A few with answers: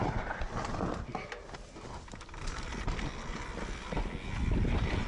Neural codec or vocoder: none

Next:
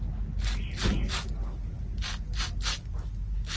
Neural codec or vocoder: none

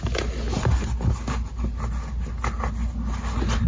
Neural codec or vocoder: none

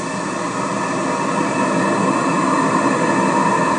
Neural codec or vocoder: none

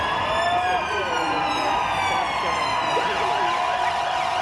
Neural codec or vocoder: none